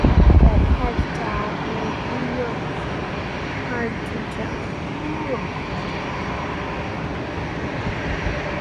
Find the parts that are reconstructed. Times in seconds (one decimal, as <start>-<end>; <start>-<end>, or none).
none